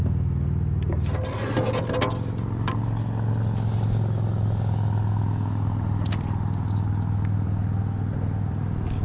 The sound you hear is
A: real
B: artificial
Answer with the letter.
A